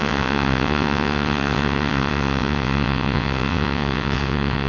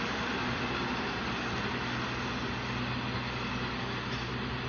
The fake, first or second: first